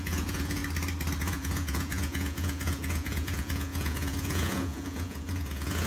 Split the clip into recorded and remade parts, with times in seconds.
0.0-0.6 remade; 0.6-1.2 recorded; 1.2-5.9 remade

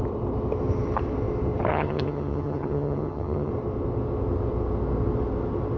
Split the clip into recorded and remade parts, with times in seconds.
0.0-1.7 recorded; 1.7-3.5 remade; 3.5-5.8 recorded

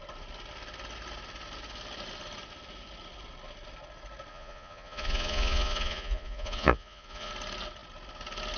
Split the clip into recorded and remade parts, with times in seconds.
0.0-4.3 recorded; 4.3-7.3 remade; 7.3-8.6 recorded

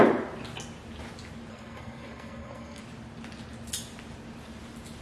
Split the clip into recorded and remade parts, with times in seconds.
0.0-1.5 recorded; 1.5-2.8 remade; 2.8-5.0 recorded